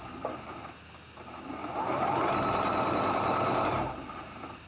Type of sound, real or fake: real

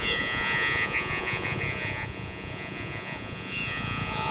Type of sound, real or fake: fake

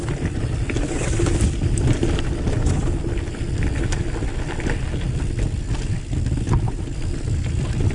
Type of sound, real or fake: real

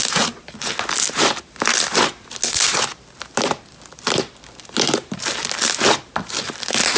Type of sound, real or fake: real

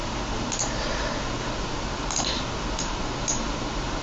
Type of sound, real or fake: real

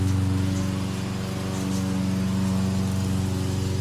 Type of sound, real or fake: real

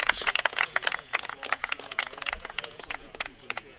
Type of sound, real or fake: fake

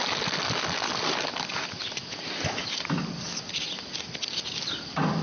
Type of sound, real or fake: real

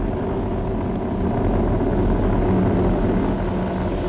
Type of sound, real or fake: real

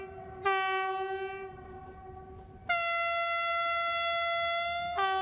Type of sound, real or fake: real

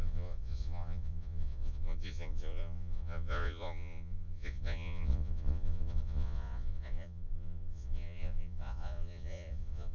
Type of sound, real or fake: fake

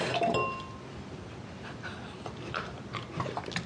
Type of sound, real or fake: real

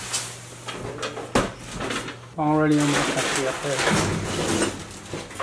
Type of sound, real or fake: real